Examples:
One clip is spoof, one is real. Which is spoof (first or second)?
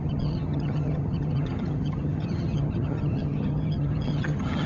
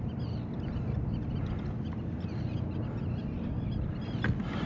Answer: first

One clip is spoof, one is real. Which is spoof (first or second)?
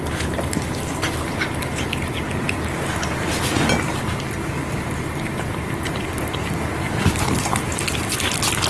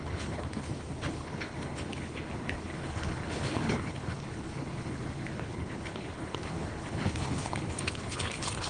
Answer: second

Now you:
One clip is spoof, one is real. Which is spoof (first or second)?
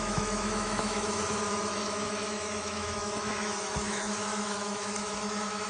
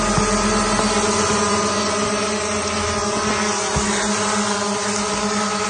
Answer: first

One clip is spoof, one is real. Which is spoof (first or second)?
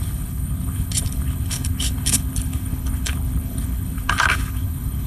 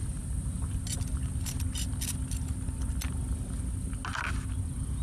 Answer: first